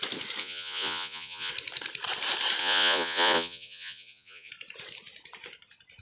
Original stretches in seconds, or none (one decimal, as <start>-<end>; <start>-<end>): 0.0-0.4; 1.5-2.6; 4.5-6.0